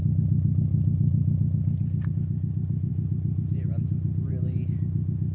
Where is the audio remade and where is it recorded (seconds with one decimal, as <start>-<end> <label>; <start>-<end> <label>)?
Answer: 0.0-5.3 recorded